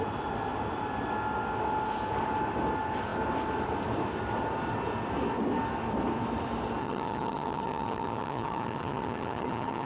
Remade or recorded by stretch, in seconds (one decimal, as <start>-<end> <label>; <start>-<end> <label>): 0.0-6.8 recorded; 6.8-9.9 remade